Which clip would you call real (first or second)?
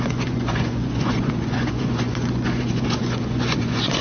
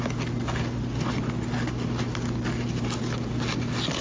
second